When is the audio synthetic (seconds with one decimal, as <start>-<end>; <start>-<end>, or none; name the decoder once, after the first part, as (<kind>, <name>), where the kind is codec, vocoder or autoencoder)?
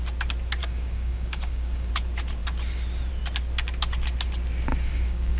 0.6-1.9 (codec, DAC); 4.7-5.4